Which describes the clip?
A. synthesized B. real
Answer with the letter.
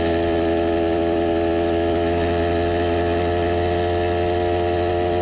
B